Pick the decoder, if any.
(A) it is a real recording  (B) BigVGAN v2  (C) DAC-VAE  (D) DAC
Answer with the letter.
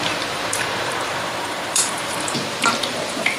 B